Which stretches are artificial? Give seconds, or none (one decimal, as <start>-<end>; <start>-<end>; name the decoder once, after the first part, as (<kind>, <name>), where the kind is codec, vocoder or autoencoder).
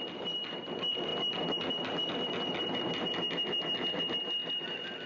none